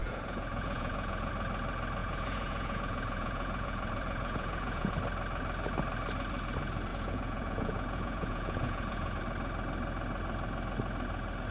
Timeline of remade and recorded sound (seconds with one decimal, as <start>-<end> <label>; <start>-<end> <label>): 0.0-1.3 remade; 1.3-2.0 recorded; 2.0-4.9 remade; 4.9-6.9 recorded; 6.9-9.2 remade; 9.2-11.5 recorded